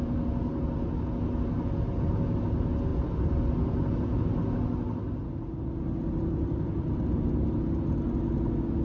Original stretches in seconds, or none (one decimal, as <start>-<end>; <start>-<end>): 0.0-8.8